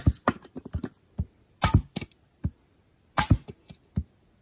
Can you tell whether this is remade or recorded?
recorded